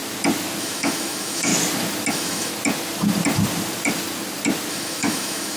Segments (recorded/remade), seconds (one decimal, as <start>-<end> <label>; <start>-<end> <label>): 0.0-0.6 recorded; 0.6-1.5 remade; 1.5-2.1 recorded; 2.1-2.5 remade; 2.5-4.7 recorded; 4.7-5.6 remade